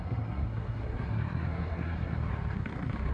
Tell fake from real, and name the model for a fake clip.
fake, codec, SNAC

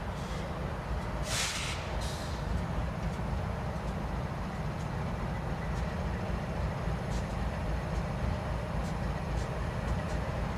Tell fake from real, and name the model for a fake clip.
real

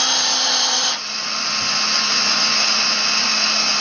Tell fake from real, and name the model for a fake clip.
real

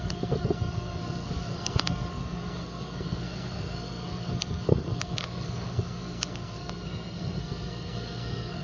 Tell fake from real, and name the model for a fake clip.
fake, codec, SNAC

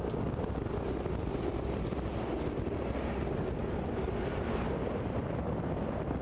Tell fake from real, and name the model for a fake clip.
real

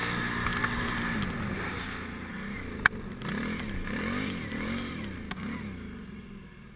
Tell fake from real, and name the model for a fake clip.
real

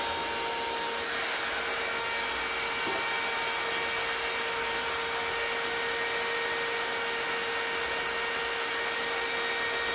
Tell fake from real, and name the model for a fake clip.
real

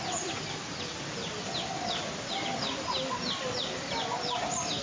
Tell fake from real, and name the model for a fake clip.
real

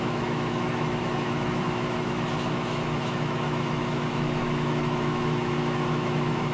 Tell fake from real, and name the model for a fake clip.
fake, autoencoder, DAC-VAE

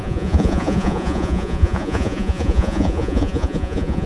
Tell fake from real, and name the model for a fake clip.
fake, vocoder, Vocos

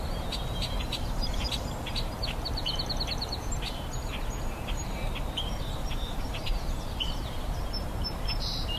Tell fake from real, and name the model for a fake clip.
fake, vocoder, BigVGAN v2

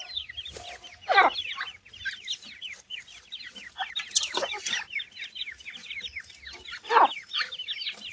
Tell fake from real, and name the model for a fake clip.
real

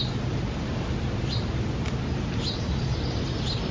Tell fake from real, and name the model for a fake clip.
real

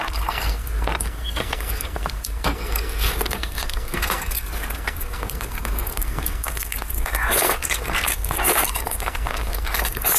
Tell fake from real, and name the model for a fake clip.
fake, codec, SNAC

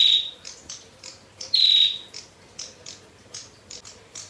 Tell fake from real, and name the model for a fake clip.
real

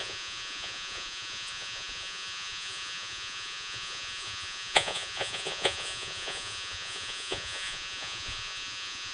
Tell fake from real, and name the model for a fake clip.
fake, vocoder, Vocos